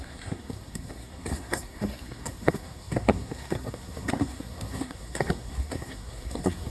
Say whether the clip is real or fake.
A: fake